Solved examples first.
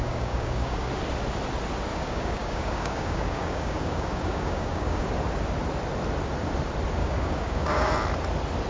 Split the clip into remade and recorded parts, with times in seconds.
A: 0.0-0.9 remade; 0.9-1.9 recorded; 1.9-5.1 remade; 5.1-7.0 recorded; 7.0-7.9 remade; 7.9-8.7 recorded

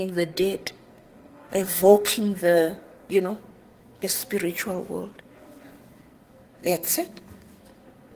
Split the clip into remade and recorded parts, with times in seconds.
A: 0.0-4.2 remade; 4.2-5.2 recorded; 5.2-8.2 remade